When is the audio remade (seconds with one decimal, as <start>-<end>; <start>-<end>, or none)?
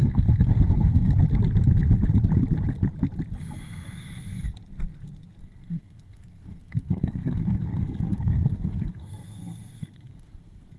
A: 0.0-1.1; 5.4-10.8